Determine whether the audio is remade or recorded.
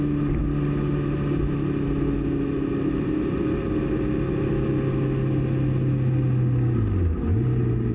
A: recorded